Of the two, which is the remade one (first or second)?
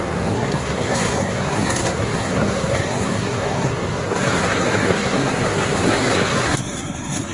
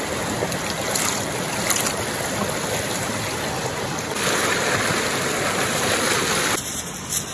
first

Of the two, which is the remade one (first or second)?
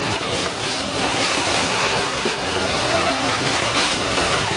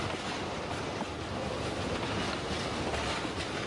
first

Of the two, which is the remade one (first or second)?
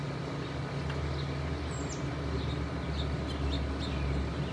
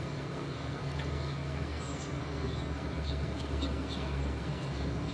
second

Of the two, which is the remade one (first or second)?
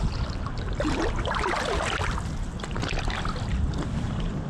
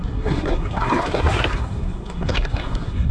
second